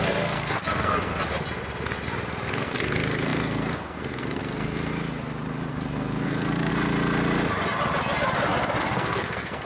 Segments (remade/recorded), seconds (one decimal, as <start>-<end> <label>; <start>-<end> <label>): 0.0-1.1 remade; 1.1-2.5 recorded; 2.5-4.9 remade; 4.9-5.7 recorded; 5.7-6.7 remade; 6.7-8.8 recorded; 8.8-9.6 remade

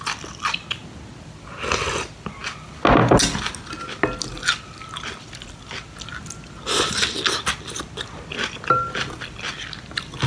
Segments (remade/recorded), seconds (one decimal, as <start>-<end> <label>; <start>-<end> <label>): 0.0-10.3 recorded

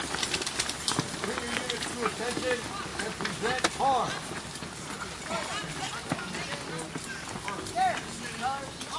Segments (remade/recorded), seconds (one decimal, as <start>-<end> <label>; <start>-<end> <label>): 0.0-9.0 recorded

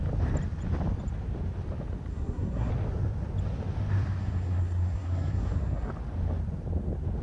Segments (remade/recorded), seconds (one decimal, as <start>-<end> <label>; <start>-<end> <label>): 0.0-2.1 recorded; 2.1-2.7 remade; 2.7-4.2 recorded; 4.2-5.9 remade; 5.9-7.2 recorded

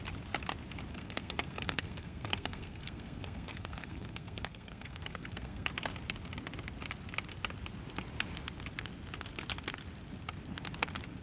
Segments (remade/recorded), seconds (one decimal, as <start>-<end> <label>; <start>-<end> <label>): 0.0-0.9 recorded; 0.9-5.7 remade; 5.7-11.2 recorded